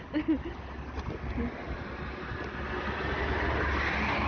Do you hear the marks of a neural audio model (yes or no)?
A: no